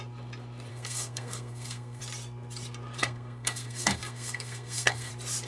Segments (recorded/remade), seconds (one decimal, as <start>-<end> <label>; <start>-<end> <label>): 0.0-0.7 recorded; 0.7-2.0 remade; 2.0-3.0 recorded; 3.0-5.1 remade; 5.1-5.5 recorded